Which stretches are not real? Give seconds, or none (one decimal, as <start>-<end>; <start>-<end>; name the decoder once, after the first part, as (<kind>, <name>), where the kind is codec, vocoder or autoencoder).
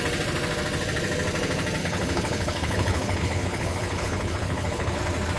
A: 1.8-5.0 (codec, HILCodec)